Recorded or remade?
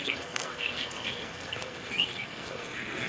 remade